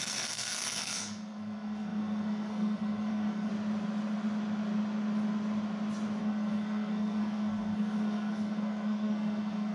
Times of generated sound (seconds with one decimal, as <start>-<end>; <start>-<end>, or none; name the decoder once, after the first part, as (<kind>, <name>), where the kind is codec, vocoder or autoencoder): 0.0-3.5 (codec, SNAC); 6.2-9.7